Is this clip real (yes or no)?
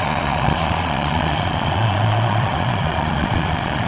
no